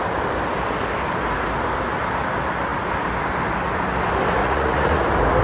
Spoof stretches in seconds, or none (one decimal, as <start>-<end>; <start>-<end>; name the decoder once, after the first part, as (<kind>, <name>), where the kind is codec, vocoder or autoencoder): 4.4-5.0 (vocoder, Vocos)